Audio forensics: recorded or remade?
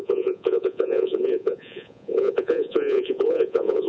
remade